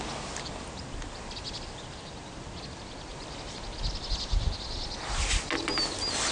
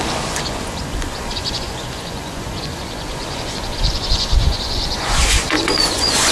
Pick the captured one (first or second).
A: first